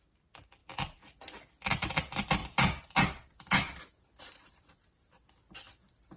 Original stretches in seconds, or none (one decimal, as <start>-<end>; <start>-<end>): 0.0-6.2